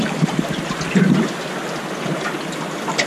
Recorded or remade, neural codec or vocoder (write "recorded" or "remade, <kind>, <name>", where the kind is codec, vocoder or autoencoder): recorded